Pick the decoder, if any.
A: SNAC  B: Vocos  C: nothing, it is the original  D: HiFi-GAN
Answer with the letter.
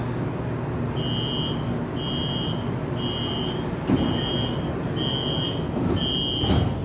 C